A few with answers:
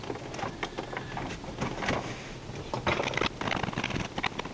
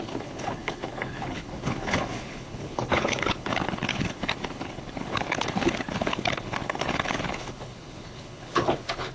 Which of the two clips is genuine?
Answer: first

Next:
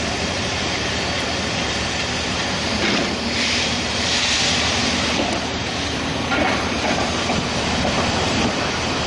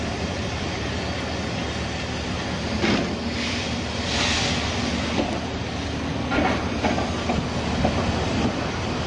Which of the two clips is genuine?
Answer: second